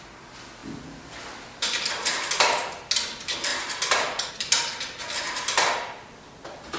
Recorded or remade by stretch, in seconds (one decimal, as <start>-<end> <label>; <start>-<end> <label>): 0.0-6.8 recorded